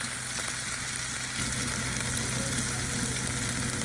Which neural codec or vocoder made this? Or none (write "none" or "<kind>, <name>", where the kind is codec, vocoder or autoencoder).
none